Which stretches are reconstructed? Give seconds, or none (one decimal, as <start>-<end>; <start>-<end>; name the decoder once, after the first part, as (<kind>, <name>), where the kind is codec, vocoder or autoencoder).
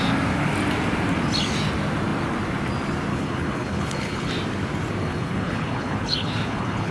3.1-4.3 (codec, HILCodec); 5.0-6.9